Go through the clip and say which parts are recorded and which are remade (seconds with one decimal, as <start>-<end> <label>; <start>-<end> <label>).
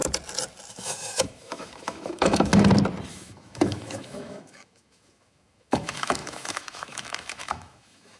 0.0-0.7 recorded; 0.7-2.5 remade; 2.5-3.1 recorded; 3.1-8.2 remade